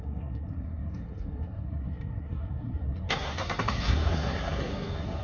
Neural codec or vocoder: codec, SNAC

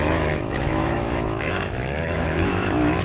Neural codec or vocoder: autoencoder, DAC-VAE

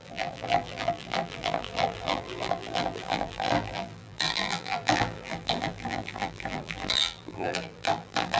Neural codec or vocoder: vocoder, BigVGAN v2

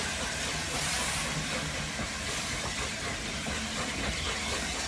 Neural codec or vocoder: vocoder, BigVGAN v2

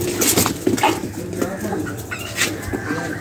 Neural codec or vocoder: none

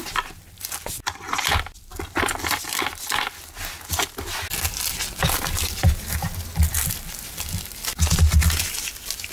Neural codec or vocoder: none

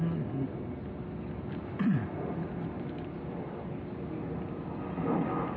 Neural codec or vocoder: none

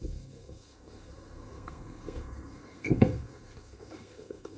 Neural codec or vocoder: codec, SNAC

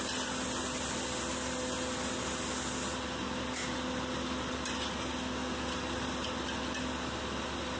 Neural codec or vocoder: none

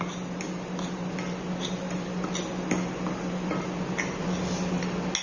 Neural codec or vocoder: none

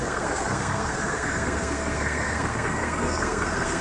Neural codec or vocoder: codec, SNAC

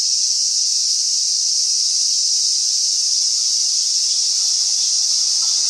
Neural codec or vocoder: none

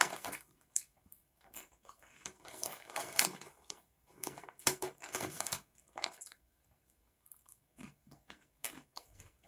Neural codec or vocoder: codec, SNAC